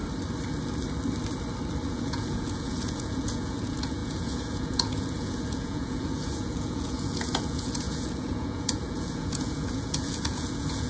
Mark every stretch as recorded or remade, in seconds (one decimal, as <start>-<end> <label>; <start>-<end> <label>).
0.0-1.9 recorded; 1.9-10.9 remade